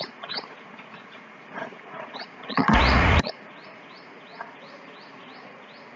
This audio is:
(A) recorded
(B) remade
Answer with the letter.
B